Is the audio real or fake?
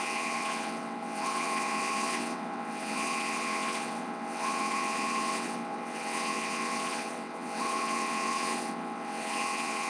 fake